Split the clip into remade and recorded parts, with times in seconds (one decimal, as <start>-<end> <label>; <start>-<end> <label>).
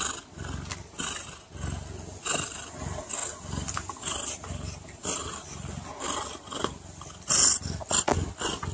0.0-8.7 recorded